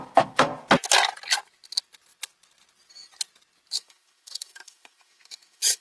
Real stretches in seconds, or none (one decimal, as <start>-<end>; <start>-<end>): 0.5-3.8